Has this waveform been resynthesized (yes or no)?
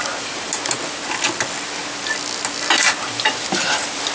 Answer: no